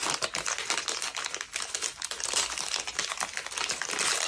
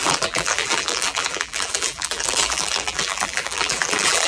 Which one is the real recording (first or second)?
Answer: first